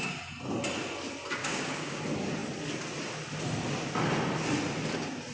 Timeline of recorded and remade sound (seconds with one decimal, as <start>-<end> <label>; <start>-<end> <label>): 0.0-1.4 recorded; 1.4-2.0 remade; 2.0-5.3 recorded